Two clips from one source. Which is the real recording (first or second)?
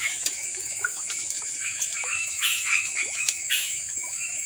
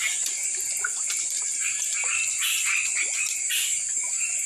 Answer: second